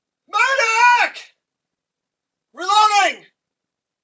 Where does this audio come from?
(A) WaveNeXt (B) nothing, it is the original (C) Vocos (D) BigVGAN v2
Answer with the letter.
D